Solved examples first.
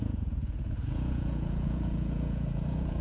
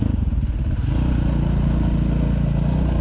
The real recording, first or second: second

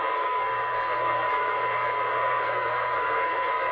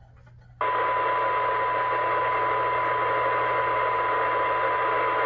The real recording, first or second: second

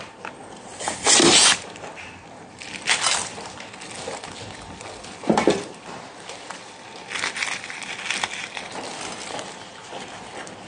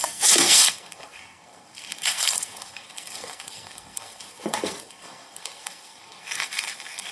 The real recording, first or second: first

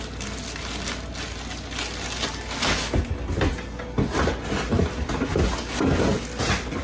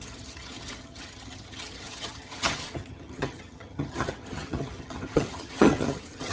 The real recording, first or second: first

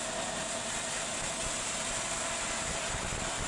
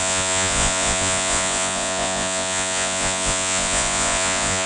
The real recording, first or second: first